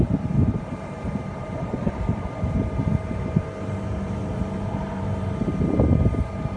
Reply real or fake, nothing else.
fake